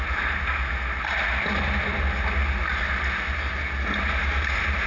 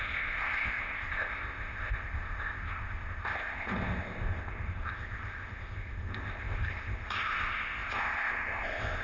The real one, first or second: first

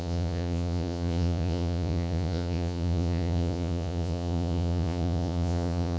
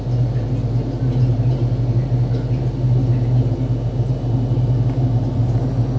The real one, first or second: second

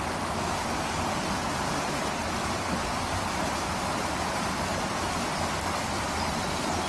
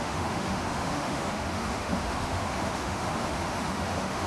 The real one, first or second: first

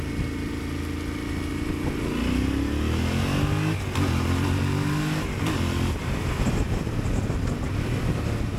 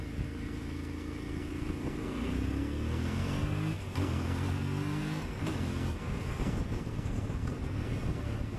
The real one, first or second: first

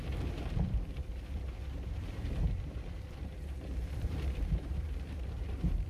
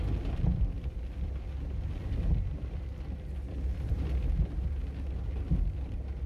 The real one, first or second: second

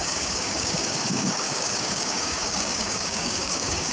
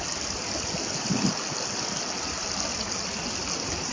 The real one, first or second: second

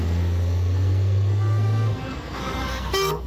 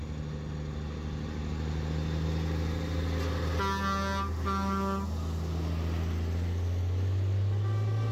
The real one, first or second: second